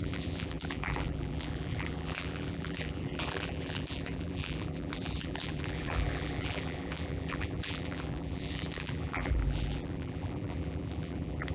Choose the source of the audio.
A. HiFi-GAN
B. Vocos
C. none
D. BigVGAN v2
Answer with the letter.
D